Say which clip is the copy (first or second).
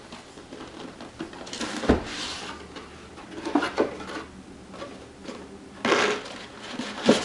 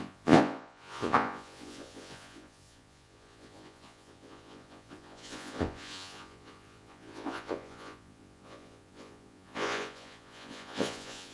second